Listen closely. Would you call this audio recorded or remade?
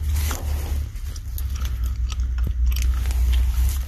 recorded